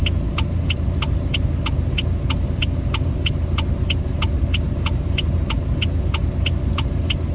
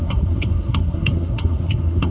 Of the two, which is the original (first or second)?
first